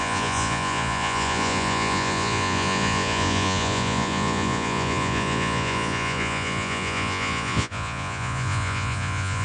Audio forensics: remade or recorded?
remade